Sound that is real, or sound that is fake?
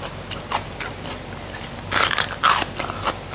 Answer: real